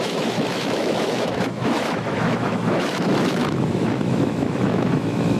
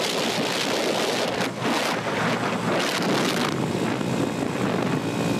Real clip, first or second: second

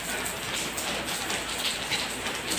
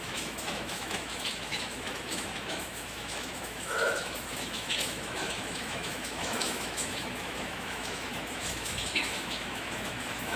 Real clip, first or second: first